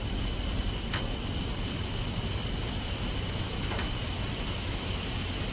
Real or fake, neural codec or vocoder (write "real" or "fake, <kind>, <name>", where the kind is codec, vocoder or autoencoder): real